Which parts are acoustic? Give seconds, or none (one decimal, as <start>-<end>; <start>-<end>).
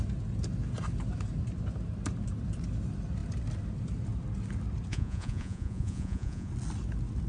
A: 0.0-4.9; 6.5-7.3